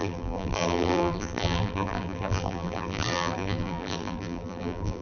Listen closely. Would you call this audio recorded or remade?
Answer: remade